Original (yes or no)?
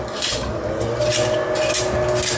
yes